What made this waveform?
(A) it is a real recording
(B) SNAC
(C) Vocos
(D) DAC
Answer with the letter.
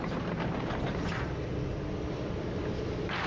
A